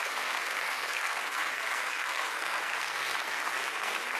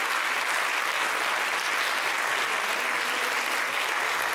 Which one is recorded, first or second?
second